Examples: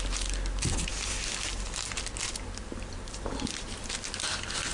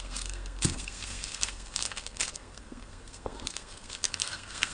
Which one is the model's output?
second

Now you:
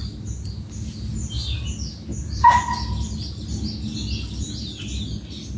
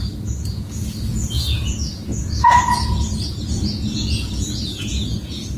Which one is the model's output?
second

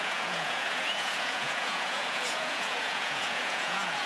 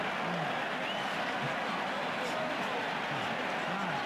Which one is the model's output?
first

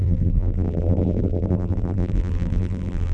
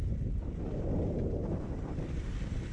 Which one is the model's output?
first